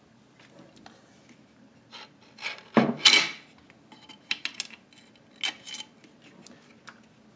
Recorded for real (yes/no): yes